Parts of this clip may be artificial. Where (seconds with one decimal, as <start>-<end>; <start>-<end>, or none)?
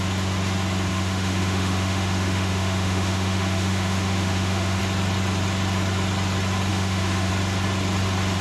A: 0.9-4.8; 6.7-7.3